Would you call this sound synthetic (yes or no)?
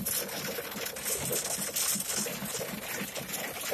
no